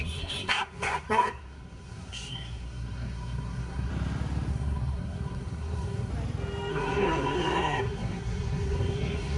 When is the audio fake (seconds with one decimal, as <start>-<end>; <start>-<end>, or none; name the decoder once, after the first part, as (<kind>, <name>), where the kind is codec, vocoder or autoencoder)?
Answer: 0.0-3.9 (codec, SNAC); 4.5-6.1; 6.7-9.4